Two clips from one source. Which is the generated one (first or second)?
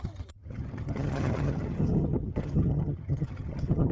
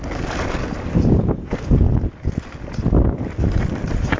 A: first